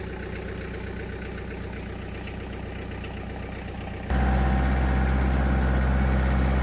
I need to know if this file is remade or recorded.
recorded